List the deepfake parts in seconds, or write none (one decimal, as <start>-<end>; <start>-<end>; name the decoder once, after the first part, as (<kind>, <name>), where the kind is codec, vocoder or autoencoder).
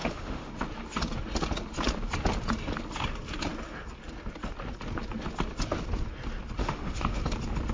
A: 0.0-0.5 (autoencoder, DAC-VAE); 6.6-7.2